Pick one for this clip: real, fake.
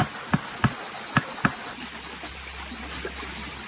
real